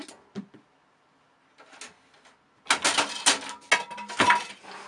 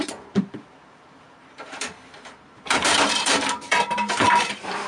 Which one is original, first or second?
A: first